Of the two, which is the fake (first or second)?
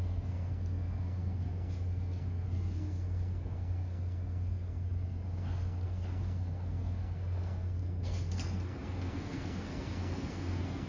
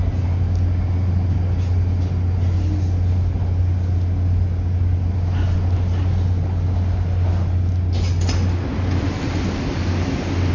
first